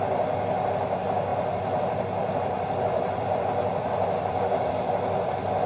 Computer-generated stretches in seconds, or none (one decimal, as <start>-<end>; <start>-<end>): 1.3-4.7